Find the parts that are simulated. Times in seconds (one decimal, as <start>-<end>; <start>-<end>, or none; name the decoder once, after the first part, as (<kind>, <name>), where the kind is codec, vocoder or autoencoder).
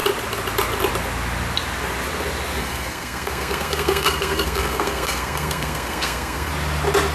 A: 2.6-6.5 (codec, SNAC)